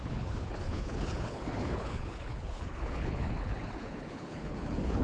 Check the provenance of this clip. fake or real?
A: fake